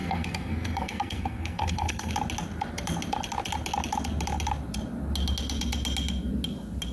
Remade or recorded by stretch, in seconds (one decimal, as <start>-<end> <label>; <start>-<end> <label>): 0.0-2.1 remade; 2.1-6.9 recorded